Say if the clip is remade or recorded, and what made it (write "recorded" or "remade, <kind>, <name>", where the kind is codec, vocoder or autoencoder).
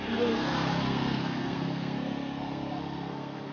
remade, codec, SNAC